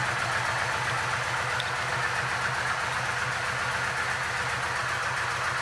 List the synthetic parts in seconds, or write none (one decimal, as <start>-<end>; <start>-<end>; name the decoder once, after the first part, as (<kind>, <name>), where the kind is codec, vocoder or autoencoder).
none

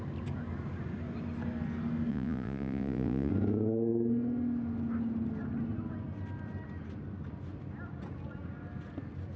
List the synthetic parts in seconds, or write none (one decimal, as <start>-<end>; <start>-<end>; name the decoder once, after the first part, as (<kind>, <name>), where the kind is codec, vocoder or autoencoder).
2.1-3.3 (vocoder, Vocos)

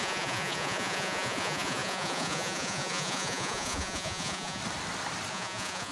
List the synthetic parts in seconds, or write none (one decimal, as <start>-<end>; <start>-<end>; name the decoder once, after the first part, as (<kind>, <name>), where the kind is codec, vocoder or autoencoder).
0.0-4.6 (vocoder, Vocos); 5.3-5.9

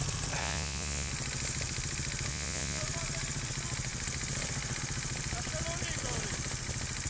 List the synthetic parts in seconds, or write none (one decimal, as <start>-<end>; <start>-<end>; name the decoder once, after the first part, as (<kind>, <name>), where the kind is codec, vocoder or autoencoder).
0.4-1.1 (vocoder, Vocos); 2.3-2.8

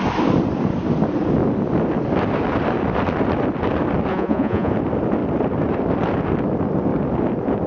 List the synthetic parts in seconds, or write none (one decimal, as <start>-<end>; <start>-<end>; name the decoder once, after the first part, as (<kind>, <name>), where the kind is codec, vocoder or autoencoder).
4.1-4.7 (vocoder, Vocos)

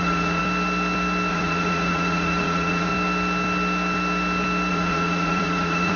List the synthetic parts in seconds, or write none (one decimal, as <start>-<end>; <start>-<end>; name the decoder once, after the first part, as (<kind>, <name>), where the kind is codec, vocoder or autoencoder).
0.0-0.4 (vocoder, Vocos); 1.3-2.9; 4.7-6.0

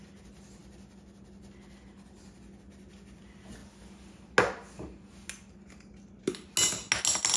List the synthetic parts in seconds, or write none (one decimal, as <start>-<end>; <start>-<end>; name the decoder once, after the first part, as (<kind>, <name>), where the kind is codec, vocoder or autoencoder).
none

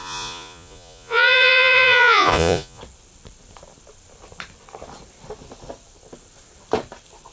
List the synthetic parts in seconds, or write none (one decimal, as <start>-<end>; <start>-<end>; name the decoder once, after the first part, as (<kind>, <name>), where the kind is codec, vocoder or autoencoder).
0.0-2.8 (vocoder, Vocos)